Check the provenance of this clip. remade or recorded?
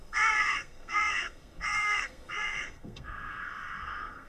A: remade